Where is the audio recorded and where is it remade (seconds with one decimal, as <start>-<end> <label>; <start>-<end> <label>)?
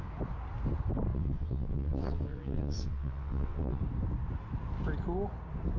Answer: 0.0-1.1 recorded; 1.1-3.8 remade; 3.8-5.8 recorded